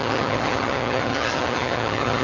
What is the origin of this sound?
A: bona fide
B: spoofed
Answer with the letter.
B